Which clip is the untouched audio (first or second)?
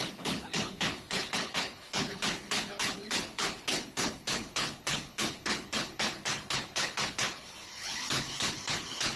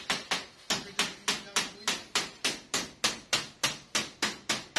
second